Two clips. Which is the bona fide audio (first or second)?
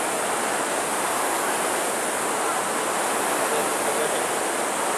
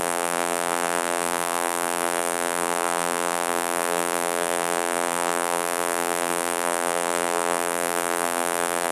first